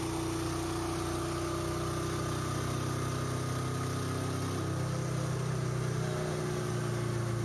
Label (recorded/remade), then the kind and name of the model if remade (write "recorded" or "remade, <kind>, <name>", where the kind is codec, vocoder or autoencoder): recorded